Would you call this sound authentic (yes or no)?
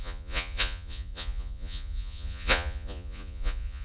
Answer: no